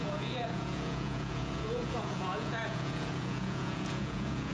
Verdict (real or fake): fake